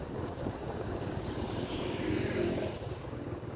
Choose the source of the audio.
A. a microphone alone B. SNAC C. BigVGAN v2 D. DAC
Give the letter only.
D